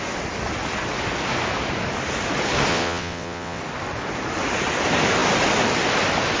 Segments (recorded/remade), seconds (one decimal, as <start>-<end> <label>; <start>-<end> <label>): 0.0-2.7 recorded; 2.7-3.6 remade; 3.6-6.4 recorded